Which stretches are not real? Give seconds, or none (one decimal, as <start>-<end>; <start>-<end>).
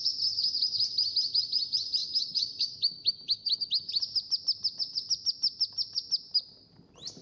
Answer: 2.0-3.9